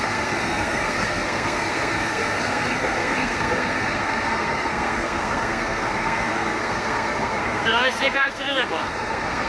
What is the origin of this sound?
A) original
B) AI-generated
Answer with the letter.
B